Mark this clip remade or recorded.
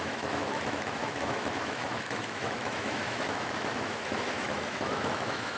remade